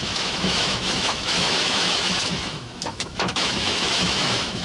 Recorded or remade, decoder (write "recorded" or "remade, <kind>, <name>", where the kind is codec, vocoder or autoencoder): remade, autoencoder, DAC-VAE